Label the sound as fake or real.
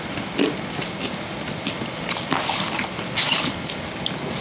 real